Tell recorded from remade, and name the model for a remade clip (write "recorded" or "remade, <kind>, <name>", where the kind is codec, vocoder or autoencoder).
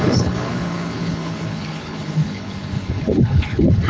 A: remade, codec, HILCodec